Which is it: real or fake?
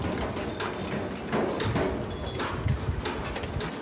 real